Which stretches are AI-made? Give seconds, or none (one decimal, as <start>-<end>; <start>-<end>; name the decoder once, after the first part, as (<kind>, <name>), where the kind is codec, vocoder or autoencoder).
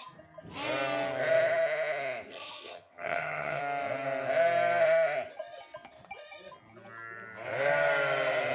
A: 2.3-3.6 (vocoder, HiFi-GAN)